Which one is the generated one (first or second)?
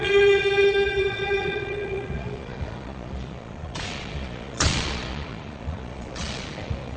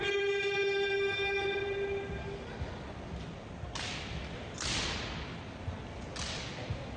first